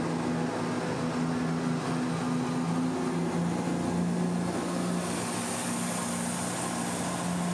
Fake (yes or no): no